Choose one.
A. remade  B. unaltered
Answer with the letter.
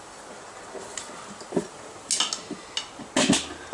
B